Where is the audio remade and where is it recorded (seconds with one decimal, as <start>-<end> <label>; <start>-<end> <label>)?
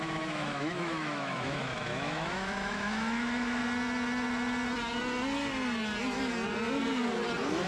0.0-3.6 remade; 3.6-7.7 recorded